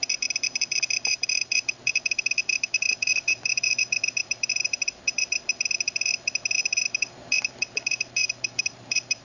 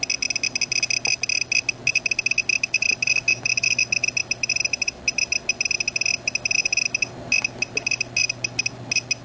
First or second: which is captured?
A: second